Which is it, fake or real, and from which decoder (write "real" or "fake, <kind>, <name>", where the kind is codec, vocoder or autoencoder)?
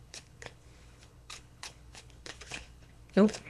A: fake, codec, HILCodec